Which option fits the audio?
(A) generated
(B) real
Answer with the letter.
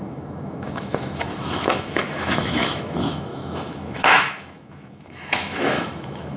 A